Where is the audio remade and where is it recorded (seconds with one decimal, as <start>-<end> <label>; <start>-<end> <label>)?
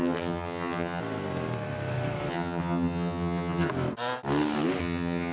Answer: 0.0-1.0 remade; 1.0-2.3 recorded; 2.3-3.7 remade; 3.7-4.8 recorded; 4.8-5.3 remade